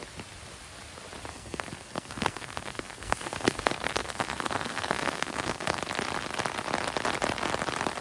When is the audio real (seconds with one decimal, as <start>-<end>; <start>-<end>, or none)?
0.0-1.3; 5.8-8.0